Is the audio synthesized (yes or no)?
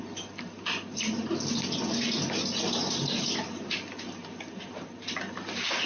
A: no